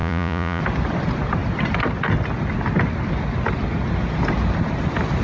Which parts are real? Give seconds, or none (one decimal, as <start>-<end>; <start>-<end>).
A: 0.6-5.2